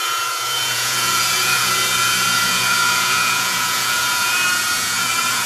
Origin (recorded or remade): remade